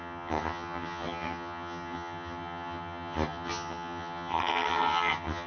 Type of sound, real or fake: fake